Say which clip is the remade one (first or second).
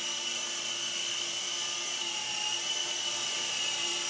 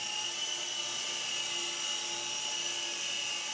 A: first